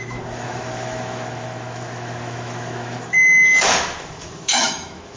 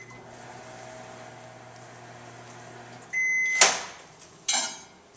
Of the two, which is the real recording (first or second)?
second